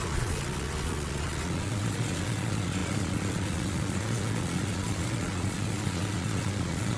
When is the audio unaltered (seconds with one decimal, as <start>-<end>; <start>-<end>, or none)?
none